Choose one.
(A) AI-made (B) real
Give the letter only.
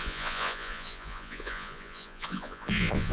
A